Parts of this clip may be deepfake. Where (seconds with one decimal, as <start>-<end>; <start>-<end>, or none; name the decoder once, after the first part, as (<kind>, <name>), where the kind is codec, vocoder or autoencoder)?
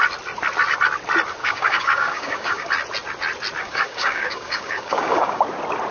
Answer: 1.4-2.7 (codec, DAC); 3.6-5.4